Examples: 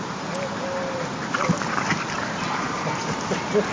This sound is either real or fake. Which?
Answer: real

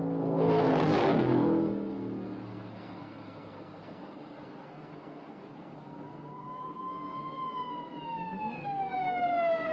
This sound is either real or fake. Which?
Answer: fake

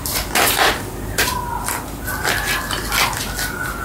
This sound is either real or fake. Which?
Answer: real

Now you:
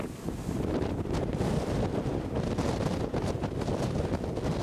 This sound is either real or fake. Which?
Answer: real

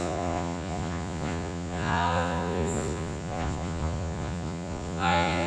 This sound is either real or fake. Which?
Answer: fake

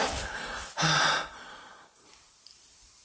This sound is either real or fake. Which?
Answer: fake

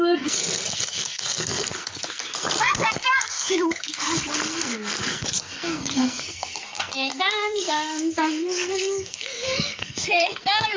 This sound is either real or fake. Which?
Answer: fake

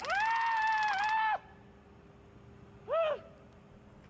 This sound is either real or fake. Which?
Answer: real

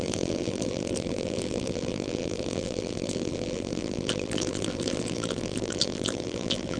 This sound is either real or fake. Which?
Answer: fake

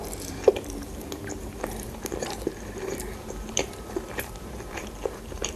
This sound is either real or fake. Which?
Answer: fake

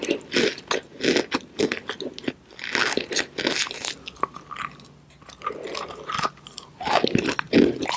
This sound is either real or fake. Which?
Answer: real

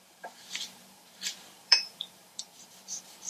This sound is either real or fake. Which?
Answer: fake